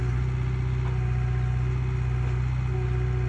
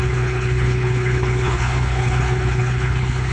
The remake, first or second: second